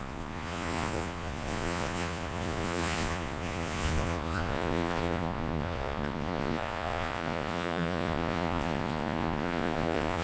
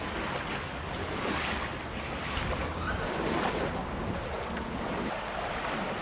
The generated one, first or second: first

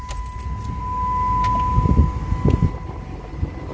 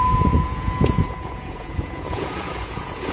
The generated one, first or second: second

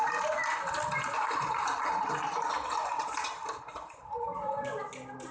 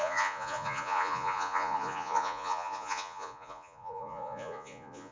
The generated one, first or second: second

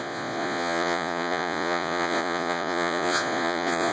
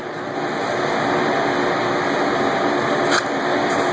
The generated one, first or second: first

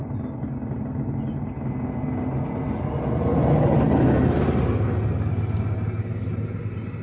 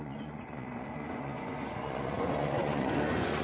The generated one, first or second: second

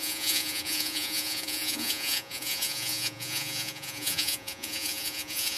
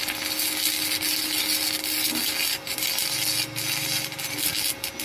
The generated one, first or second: first